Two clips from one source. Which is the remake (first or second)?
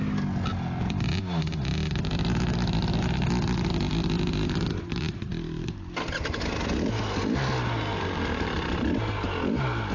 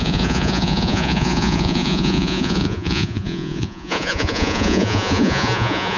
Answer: second